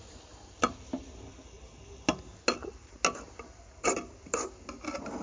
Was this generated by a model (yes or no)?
no